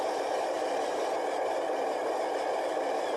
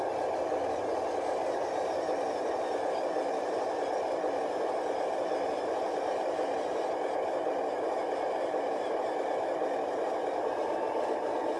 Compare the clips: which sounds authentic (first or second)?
second